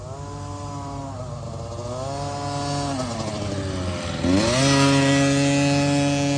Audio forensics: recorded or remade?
recorded